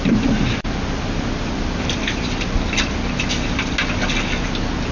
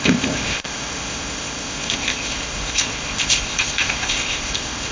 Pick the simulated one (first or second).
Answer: second